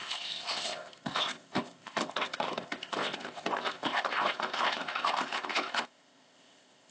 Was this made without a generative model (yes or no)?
no